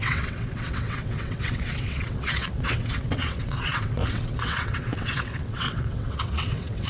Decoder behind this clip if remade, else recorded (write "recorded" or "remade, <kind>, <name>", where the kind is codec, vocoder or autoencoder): remade, vocoder, WaveNeXt